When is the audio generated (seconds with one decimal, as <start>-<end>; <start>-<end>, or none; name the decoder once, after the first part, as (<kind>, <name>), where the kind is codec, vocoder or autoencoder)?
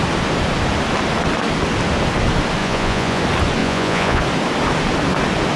2.6-3.2 (vocoder, Vocos); 3.6-4.2